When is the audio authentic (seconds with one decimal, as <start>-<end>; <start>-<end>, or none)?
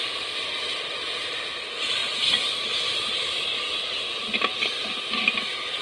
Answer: 0.0-2.0; 3.1-5.8